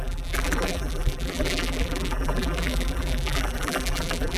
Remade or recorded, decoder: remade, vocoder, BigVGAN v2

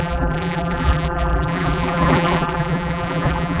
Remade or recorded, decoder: remade, vocoder, BigVGAN v2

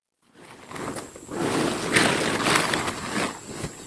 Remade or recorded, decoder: recorded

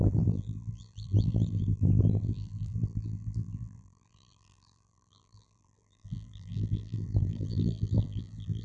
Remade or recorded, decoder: remade, vocoder, BigVGAN v2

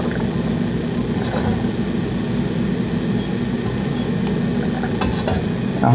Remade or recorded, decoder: recorded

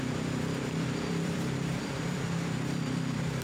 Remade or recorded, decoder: remade, vocoder, BigVGAN v2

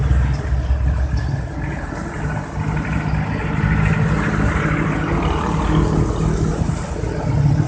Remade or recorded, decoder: recorded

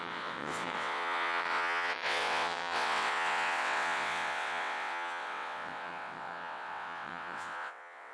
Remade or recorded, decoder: remade, vocoder, WaveNeXt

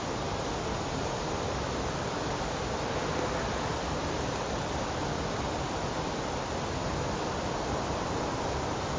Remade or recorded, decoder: recorded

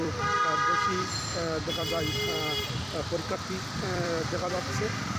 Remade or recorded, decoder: remade, vocoder, BigVGAN v2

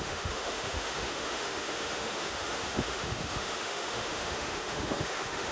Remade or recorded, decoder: remade, autoencoder, DAC-VAE